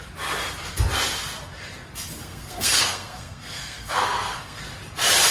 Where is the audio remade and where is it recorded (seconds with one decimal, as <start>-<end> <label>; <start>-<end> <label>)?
0.0-2.2 recorded; 2.2-4.6 remade; 4.6-5.3 recorded